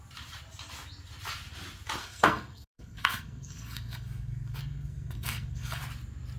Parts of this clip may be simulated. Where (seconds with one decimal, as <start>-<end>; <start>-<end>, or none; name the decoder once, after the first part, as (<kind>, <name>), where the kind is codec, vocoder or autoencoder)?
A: 2.0-5.8 (codec, SNAC)